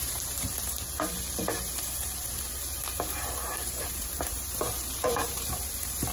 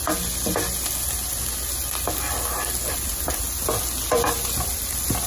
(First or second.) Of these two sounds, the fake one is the first